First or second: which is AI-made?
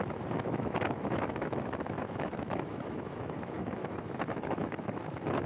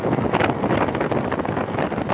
first